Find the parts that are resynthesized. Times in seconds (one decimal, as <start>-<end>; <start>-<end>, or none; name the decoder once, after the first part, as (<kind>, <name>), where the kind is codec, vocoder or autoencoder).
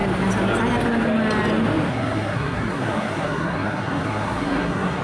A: 1.9-5.0 (codec, SNAC)